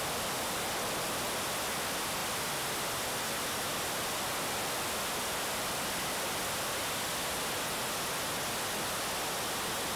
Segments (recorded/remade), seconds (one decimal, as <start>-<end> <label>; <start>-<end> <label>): 0.0-10.0 recorded